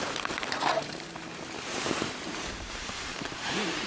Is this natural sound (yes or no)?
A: no